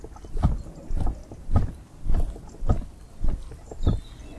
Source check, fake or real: real